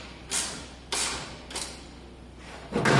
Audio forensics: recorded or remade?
recorded